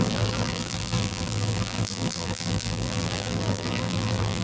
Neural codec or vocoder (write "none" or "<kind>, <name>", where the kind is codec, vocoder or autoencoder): vocoder, BigVGAN v2